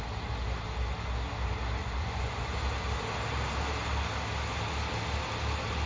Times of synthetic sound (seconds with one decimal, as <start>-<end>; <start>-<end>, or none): 1.8-2.5